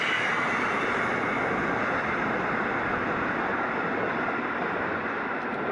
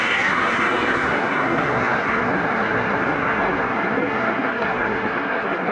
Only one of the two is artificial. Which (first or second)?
second